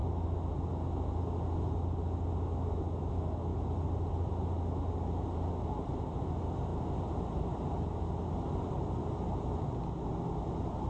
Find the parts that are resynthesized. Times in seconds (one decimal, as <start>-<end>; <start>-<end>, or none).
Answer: 3.5-4.3